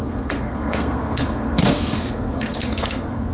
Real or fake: fake